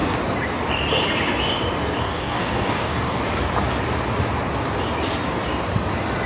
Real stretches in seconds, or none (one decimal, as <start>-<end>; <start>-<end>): 0.0-2.0; 3.2-6.3